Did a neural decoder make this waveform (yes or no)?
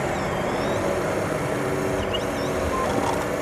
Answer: no